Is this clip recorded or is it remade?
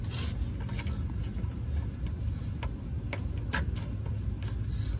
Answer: recorded